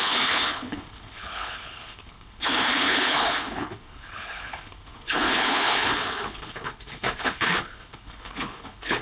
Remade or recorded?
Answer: remade